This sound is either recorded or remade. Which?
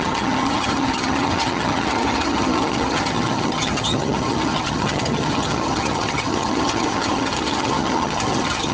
remade